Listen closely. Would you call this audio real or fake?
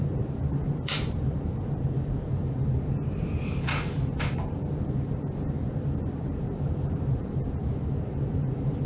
fake